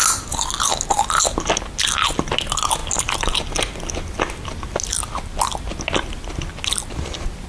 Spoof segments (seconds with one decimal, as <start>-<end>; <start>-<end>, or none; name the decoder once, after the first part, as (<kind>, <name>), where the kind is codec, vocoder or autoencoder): none